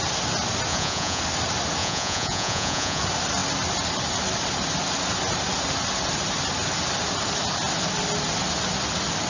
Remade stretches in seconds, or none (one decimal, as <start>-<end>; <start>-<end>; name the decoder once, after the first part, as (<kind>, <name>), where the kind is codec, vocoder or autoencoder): 0.7-1.2 (vocoder, Vocos); 1.8-3.0